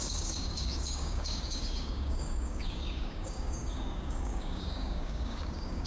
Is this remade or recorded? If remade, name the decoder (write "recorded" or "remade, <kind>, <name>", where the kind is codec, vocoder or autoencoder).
remade, codec, DAC